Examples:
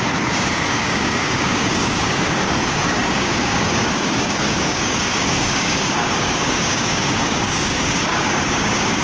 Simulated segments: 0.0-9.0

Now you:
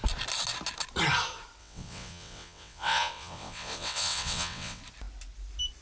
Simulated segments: 1.6-4.8

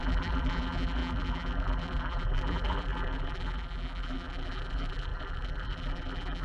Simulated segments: 0.0-6.4

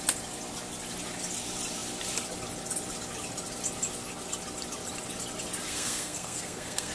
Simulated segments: 5.7-6.9

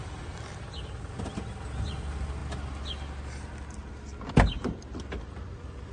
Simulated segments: none

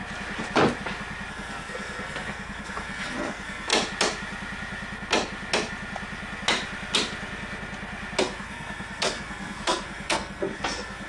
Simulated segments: 1.3-3.7; 8.2-11.1